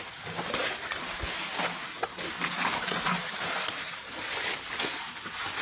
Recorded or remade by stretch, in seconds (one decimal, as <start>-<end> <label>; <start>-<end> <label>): 0.0-5.6 recorded